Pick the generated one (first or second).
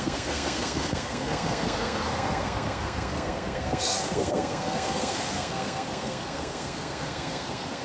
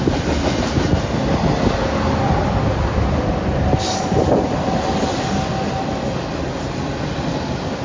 first